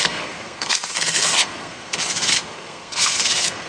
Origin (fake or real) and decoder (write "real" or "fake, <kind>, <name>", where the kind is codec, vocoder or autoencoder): fake, codec, SNAC